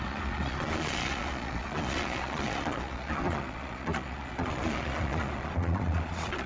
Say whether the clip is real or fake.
fake